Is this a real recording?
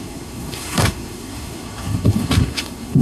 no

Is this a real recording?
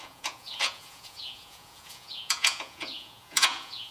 no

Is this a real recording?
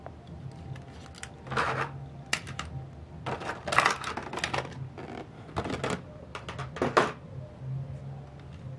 yes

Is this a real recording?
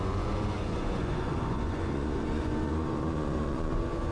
no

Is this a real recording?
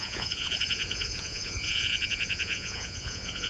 no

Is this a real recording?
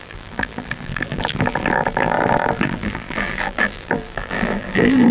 no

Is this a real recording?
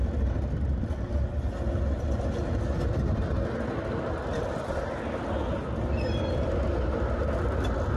yes